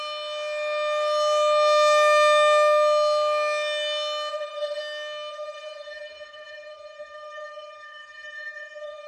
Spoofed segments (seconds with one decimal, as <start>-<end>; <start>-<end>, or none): 4.3-4.8; 5.3-9.1